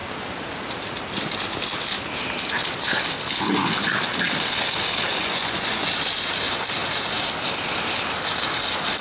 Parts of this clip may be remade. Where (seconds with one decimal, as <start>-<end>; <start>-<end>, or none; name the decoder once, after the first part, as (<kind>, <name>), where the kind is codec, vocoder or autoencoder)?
5.1-5.9 (vocoder, Vocos)